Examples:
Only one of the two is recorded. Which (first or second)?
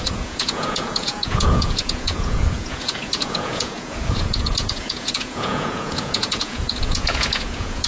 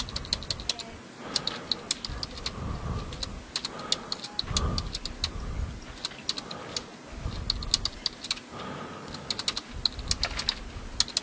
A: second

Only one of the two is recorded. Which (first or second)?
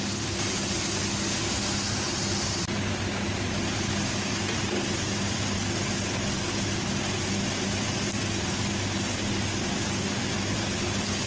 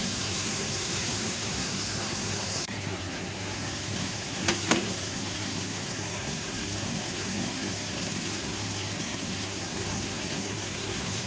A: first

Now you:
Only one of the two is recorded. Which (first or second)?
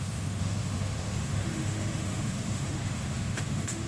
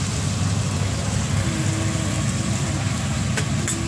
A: second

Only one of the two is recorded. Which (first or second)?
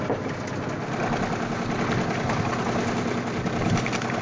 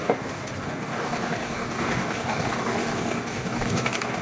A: first